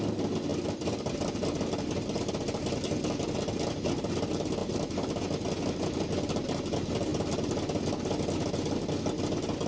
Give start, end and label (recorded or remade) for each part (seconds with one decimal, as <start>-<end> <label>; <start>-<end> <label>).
0.0-9.7 recorded